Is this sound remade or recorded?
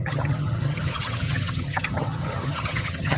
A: remade